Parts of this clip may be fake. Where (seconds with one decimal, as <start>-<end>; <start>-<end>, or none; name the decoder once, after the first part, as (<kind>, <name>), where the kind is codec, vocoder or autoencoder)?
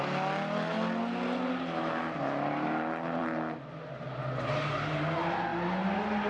none